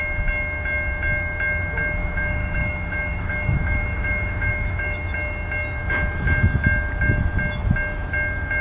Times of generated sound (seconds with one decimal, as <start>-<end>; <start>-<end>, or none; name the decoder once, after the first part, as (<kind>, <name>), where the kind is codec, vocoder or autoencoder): 2.0-5.0 (autoencoder, DAC-VAE)